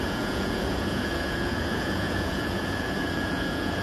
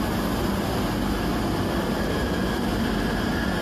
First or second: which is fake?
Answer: first